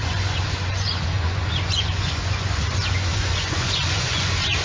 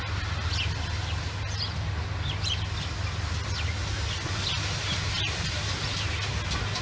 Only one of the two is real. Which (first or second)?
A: second